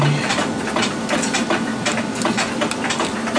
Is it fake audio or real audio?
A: real